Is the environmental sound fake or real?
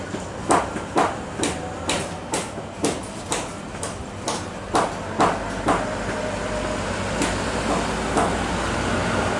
real